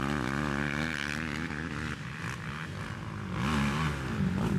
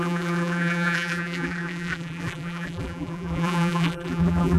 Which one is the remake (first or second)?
second